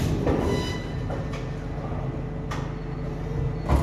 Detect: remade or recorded recorded